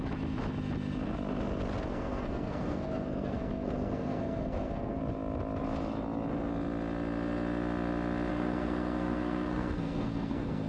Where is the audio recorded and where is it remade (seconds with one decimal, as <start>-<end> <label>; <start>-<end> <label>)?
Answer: 0.0-1.9 recorded; 1.9-5.0 remade; 5.0-8.3 recorded; 8.3-10.7 remade

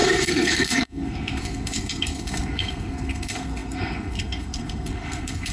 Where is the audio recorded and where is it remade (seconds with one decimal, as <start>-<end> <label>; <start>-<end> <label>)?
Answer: 0.0-5.5 remade

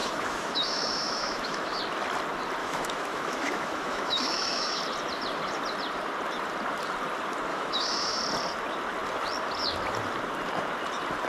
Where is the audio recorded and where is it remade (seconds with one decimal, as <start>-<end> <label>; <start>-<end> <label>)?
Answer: 0.0-1.8 remade; 1.8-2.6 recorded; 2.6-4.8 remade; 4.8-7.5 recorded; 7.5-8.2 remade; 8.2-11.3 recorded

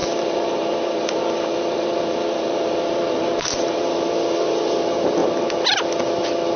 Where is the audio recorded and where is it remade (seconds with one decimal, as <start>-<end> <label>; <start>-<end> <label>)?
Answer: 0.0-4.0 remade; 4.0-6.6 recorded

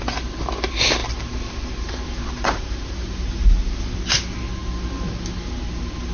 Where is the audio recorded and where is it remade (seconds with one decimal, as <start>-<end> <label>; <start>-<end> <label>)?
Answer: 0.0-1.0 recorded; 1.0-4.0 remade; 4.0-6.1 recorded

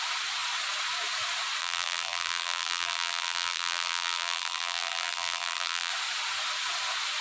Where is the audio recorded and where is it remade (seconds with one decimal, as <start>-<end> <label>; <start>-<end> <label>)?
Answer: 0.0-1.6 recorded; 1.6-5.9 remade; 5.9-7.2 recorded

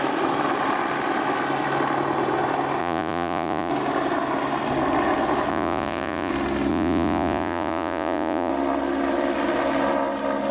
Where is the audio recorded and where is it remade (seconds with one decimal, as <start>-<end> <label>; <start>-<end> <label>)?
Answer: 0.0-2.8 recorded; 2.8-3.7 remade; 3.7-5.5 recorded; 5.5-6.3 remade; 6.3-6.7 recorded; 6.7-8.5 remade; 8.5-10.5 recorded

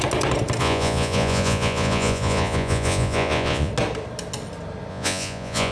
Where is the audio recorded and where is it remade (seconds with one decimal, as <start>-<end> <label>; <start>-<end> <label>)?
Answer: 0.0-0.6 recorded; 0.6-3.7 remade; 3.7-4.9 recorded; 4.9-5.7 remade